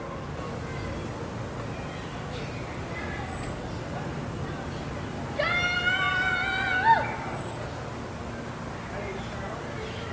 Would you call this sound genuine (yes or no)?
yes